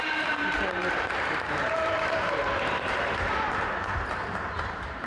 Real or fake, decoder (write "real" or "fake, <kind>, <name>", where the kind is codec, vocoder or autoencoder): fake, vocoder, BigVGAN v2